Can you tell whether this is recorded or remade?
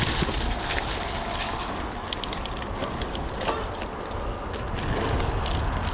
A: recorded